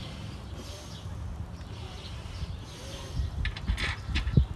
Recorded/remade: recorded